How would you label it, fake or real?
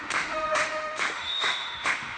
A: fake